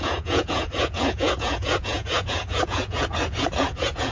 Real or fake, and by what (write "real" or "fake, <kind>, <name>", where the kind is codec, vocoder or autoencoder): fake, vocoder, Vocos